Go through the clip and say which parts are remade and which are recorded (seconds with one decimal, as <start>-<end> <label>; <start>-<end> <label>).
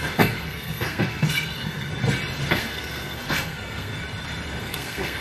0.0-1.9 remade; 1.9-2.5 recorded; 2.5-3.9 remade; 3.9-4.6 recorded; 4.6-5.2 remade